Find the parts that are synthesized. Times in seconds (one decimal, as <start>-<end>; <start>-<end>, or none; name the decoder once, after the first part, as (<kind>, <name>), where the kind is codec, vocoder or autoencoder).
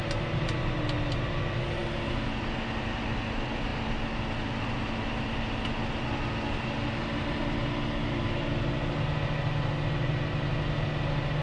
none